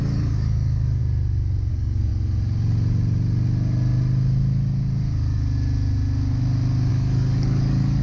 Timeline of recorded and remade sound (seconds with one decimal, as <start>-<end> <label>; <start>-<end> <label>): 0.0-1.0 remade; 1.0-1.7 recorded; 1.7-2.1 remade; 2.1-6.9 recorded; 6.9-8.0 remade

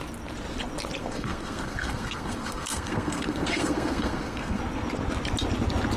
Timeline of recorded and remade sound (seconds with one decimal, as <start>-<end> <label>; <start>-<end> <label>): 0.0-1.0 recorded; 1.0-4.6 remade; 4.6-6.0 recorded

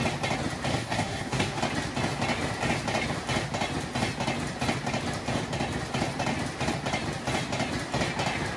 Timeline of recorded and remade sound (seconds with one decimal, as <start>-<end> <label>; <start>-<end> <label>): 0.0-0.7 recorded; 0.7-1.6 remade; 1.6-8.6 recorded